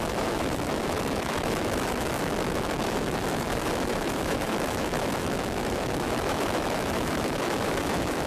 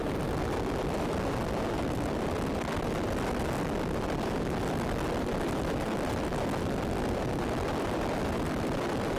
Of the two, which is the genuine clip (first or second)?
second